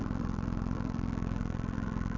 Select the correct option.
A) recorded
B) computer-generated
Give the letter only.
B